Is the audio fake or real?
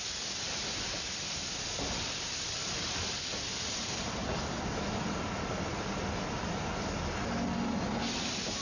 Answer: real